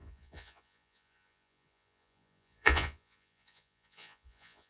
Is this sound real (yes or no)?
no